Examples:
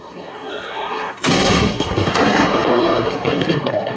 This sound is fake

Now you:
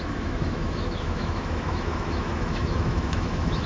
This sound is fake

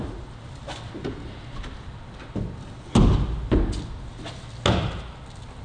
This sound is real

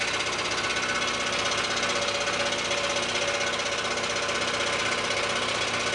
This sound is real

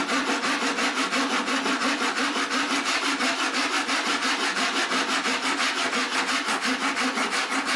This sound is real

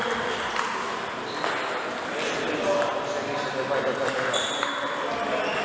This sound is real